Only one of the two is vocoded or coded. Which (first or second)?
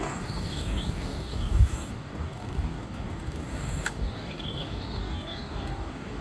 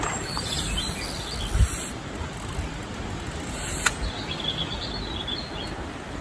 first